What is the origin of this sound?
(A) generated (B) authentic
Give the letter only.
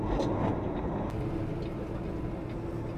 B